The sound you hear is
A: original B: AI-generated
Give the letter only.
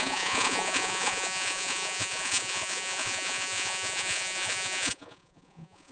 B